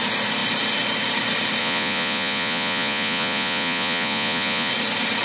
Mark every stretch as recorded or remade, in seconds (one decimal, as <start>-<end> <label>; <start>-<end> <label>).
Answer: 0.0-1.6 recorded; 1.6-4.7 remade; 4.7-5.2 recorded